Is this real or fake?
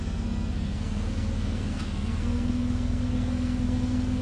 fake